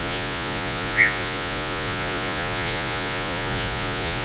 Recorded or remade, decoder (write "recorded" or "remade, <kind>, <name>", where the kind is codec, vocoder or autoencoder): remade, vocoder, Vocos